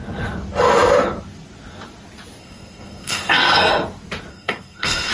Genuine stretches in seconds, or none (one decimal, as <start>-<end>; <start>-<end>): 0.0-2.4; 3.7-4.3